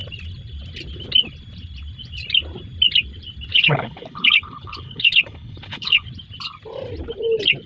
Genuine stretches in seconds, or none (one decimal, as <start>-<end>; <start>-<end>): 0.0-3.5; 6.1-7.7